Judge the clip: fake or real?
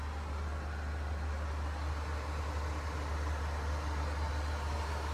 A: real